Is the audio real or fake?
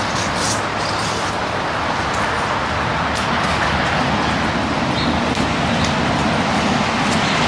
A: real